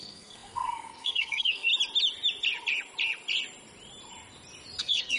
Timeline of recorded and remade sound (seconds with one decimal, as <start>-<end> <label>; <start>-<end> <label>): 0.0-1.7 remade; 1.7-4.8 recorded; 4.8-5.2 remade